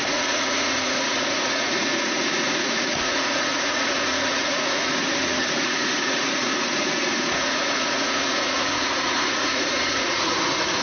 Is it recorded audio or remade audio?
remade